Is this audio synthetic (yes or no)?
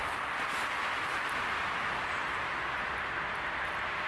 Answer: yes